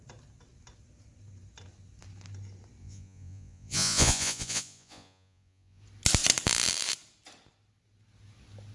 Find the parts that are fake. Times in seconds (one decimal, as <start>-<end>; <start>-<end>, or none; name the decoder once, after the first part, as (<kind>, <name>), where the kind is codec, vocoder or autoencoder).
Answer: 2.8-5.8 (vocoder, Vocos)